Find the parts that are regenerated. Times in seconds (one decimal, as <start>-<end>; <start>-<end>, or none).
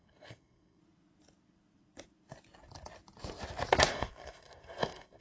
0.0-0.8; 3.9-5.2